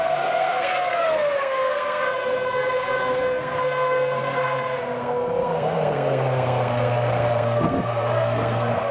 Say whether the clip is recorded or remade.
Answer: remade